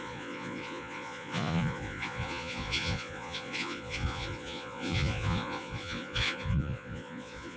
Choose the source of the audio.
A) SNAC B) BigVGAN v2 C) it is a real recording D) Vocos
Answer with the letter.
D